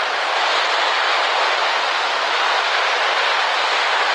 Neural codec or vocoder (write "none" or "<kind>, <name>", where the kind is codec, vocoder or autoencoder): none